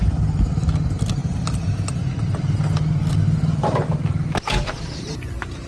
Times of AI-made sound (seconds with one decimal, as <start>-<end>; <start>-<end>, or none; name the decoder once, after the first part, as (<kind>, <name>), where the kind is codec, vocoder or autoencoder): none